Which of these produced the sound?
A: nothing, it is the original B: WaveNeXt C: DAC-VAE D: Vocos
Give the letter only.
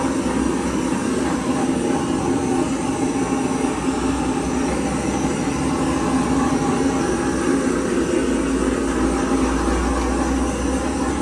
A